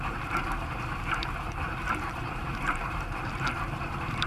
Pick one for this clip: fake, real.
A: fake